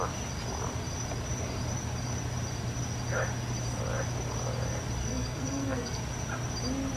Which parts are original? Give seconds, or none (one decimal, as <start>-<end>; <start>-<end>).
0.0-5.0; 6.0-7.0